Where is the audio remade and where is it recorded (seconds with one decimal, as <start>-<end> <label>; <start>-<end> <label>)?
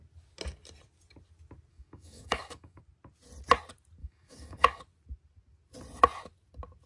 0.0-1.7 recorded; 1.7-2.8 remade; 2.8-4.0 recorded; 4.0-4.8 remade; 4.8-6.9 recorded